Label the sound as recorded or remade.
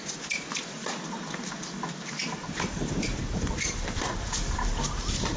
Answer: recorded